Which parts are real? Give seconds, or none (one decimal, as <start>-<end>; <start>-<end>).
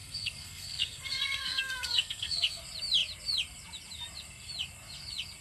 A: 2.6-5.4